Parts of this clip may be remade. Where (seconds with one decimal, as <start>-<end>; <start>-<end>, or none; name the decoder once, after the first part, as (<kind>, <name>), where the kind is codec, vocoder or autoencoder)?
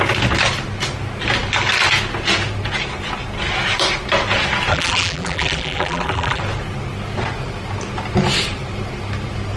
4.7-6.4 (vocoder, BigVGAN v2)